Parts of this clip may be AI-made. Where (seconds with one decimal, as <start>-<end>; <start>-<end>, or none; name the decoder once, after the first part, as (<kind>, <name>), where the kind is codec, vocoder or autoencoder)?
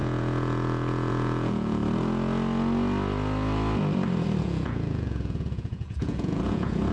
0.0-1.8 (vocoder, Vocos); 4.4-6.9